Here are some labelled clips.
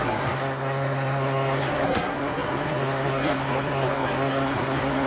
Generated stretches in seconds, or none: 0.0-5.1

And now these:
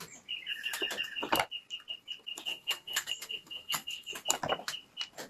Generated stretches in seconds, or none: 2.5-4.1

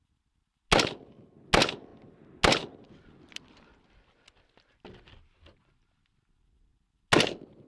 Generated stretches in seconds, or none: none

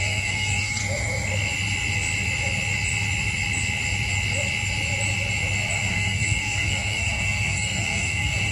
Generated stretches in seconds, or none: 0.0-0.8; 5.9-8.5

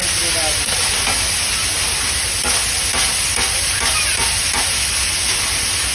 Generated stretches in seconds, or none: none

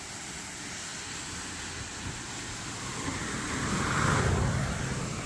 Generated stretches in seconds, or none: none

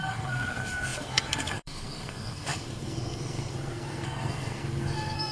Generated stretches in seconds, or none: 0.0-5.3

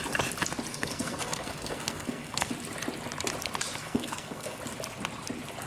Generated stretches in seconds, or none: 0.7-2.5; 3.8-4.6